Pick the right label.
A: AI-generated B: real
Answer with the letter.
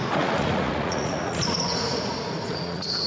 A